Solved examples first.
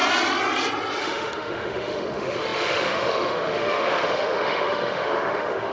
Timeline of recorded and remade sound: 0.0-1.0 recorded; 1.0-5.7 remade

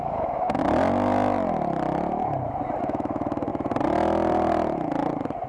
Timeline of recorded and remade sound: 0.0-0.6 remade; 0.6-2.8 recorded; 2.8-3.5 remade; 3.5-5.5 recorded

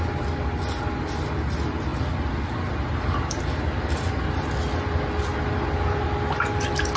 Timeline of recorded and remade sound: 0.0-7.0 recorded

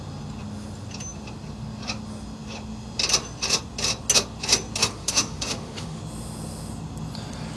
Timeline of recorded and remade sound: 0.0-4.8 recorded; 4.8-6.0 remade; 6.0-7.6 recorded